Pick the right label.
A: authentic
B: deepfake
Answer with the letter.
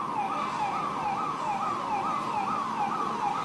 A